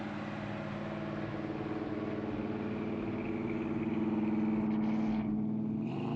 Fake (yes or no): no